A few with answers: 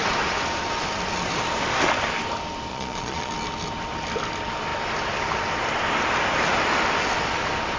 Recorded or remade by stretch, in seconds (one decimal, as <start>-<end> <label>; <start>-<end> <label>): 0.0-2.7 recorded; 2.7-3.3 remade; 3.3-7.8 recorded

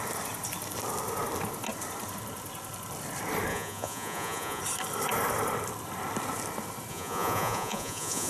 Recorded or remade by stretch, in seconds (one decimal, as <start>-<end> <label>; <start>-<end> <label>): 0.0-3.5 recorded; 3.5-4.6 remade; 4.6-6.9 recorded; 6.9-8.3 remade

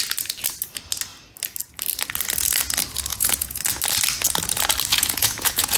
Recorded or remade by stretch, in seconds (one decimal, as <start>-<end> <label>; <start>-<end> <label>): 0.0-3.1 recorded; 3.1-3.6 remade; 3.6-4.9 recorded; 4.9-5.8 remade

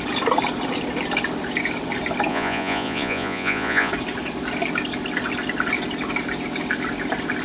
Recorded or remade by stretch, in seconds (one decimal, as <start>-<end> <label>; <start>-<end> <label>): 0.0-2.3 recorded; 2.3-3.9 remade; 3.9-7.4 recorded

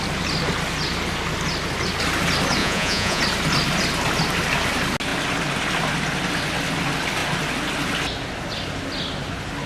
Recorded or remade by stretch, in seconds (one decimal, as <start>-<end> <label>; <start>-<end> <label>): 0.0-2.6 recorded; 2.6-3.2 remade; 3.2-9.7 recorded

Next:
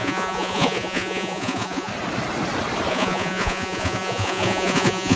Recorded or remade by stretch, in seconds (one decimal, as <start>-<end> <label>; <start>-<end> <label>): 0.0-1.9 remade; 1.9-2.9 recorded; 2.9-5.2 remade